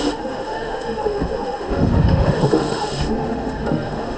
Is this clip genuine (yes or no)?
no